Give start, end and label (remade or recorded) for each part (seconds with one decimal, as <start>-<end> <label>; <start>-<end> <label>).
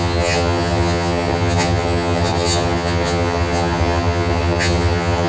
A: 0.0-5.3 remade